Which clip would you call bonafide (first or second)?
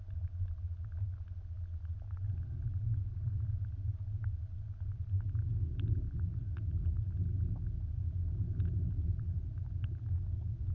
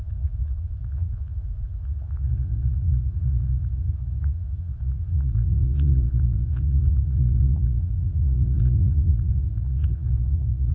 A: first